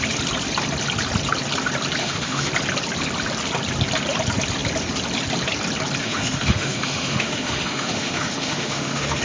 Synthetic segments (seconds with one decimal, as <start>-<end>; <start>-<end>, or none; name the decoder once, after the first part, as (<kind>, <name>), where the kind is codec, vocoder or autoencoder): 2.0-2.5 (autoencoder, DAC-VAE); 6.0-9.2